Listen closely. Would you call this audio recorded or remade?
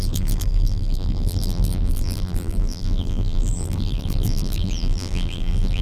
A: remade